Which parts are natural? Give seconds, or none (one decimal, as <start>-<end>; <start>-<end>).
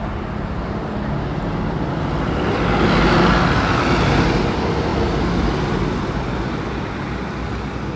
0.0-8.0